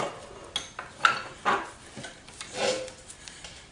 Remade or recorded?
recorded